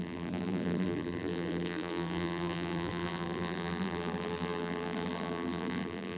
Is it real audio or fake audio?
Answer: fake